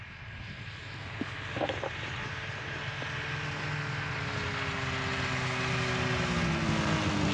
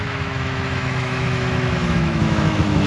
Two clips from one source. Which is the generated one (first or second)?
second